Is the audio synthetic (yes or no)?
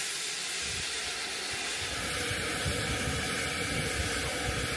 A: no